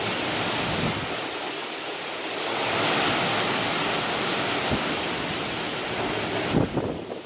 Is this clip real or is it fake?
real